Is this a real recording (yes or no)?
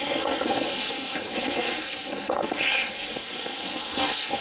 no